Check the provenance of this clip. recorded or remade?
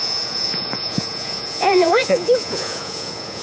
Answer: remade